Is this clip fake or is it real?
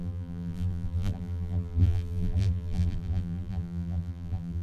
fake